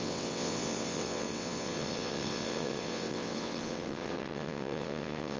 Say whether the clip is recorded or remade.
remade